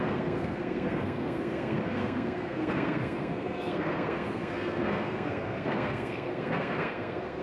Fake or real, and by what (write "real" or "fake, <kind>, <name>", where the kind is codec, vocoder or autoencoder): fake, codec, SNAC